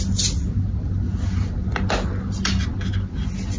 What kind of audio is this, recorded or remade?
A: recorded